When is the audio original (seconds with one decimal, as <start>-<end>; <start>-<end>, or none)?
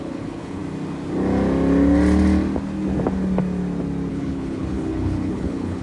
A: 0.6-4.1